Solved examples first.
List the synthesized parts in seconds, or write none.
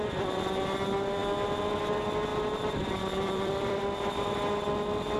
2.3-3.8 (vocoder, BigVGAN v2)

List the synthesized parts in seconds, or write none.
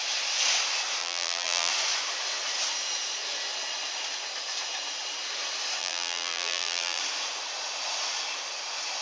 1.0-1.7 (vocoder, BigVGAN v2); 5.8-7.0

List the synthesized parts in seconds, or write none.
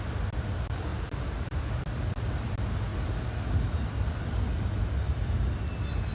0.9-1.8 (vocoder, BigVGAN v2)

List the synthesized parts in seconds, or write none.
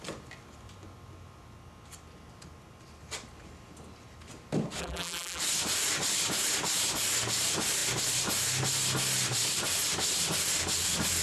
4.8-5.4 (vocoder, BigVGAN v2)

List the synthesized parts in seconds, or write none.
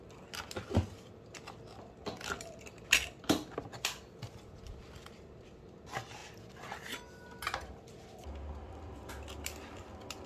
none